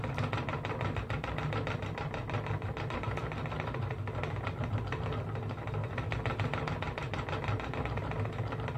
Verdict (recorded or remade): recorded